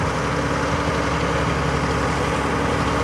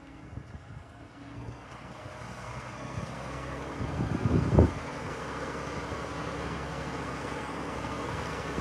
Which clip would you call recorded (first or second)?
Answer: first